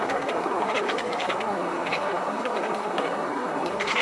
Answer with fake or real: fake